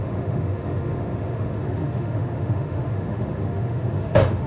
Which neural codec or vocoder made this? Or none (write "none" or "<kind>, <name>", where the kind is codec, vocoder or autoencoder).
autoencoder, DAC-VAE